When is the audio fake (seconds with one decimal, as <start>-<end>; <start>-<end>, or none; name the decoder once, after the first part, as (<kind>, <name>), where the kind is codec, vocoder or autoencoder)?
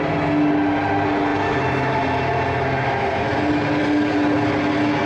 none